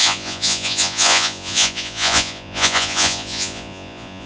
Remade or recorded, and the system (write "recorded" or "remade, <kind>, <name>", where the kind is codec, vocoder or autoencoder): remade, vocoder, Vocos